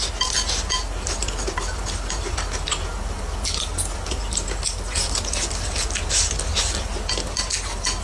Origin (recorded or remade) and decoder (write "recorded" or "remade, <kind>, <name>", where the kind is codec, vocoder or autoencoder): recorded